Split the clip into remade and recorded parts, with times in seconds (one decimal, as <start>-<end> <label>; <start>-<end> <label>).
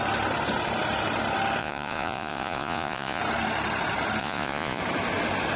0.0-1.6 recorded; 1.6-3.2 remade; 3.2-4.2 recorded; 4.2-4.8 remade; 4.8-5.6 recorded